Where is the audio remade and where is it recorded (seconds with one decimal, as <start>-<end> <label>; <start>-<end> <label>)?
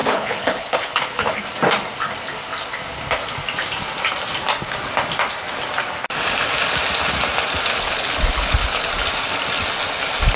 0.0-1.4 remade; 1.4-7.7 recorded; 7.7-8.9 remade; 8.9-10.4 recorded